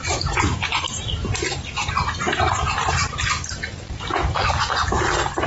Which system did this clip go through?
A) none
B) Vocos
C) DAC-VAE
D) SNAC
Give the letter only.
A